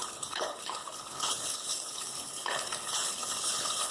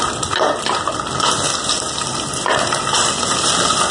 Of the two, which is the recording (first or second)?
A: second